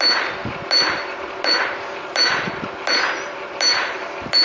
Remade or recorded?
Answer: recorded